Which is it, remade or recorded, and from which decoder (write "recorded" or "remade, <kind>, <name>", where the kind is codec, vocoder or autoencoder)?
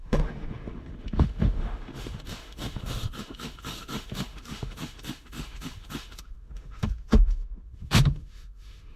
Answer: remade, autoencoder, DAC-VAE